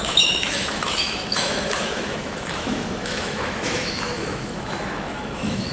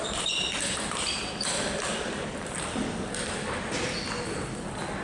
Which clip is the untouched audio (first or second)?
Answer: second